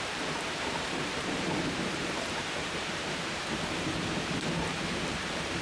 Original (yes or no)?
no